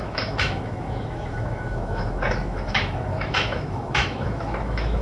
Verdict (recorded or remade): remade